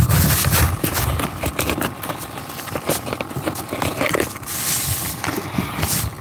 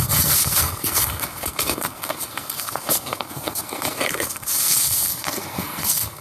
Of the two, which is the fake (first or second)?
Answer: second